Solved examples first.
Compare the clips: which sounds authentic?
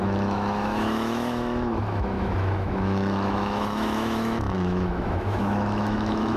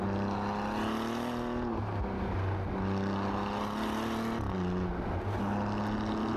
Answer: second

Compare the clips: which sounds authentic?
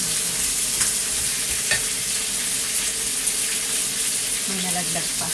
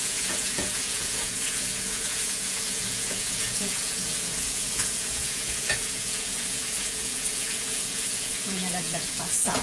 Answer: first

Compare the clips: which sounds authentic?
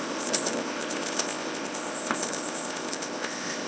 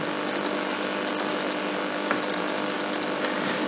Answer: second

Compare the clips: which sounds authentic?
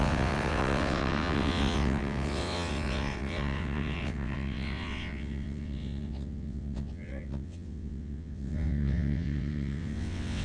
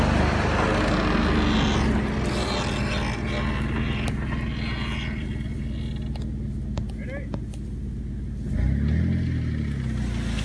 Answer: second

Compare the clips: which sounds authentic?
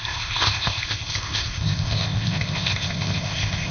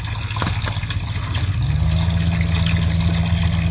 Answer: second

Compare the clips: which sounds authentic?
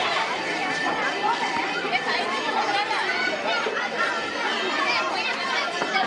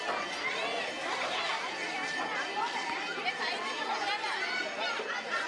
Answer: second